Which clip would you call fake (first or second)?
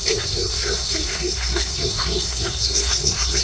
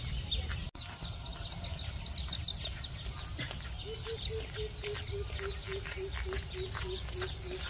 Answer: first